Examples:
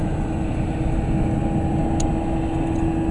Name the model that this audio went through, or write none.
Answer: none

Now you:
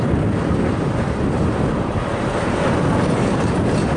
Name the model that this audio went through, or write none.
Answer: none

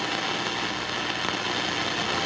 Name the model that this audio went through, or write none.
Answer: none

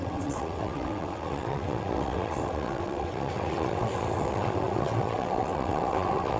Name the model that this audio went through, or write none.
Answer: vocoder, WaveNeXt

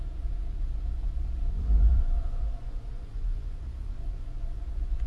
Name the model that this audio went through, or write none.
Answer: vocoder, Vocos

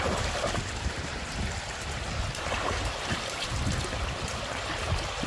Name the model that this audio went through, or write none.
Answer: none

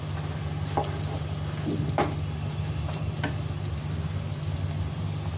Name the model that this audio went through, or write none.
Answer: none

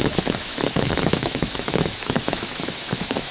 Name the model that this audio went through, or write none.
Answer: autoencoder, DAC-VAE